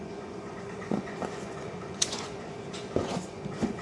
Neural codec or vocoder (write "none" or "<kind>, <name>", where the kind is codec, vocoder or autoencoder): vocoder, Vocos